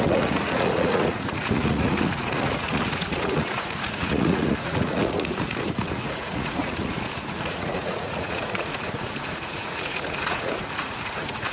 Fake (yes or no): yes